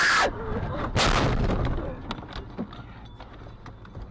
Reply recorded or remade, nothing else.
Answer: recorded